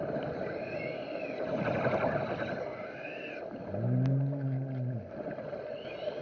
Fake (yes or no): no